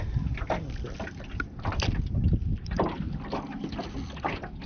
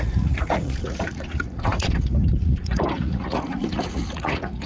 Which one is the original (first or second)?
first